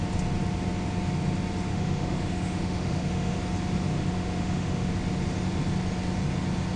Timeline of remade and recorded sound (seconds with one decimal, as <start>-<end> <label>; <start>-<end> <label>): 0.0-1.7 recorded; 1.7-3.4 remade; 3.4-3.9 recorded; 3.9-4.9 remade; 4.9-6.8 recorded